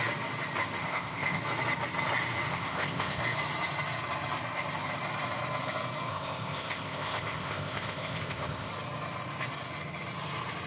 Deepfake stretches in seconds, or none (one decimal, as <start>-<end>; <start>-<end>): 0.8-1.4; 2.5-3.2; 6.1-8.7